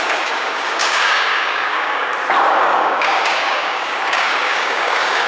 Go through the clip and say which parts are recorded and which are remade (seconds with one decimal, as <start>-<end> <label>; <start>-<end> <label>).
0.0-2.1 remade; 2.1-2.6 recorded; 2.6-5.3 remade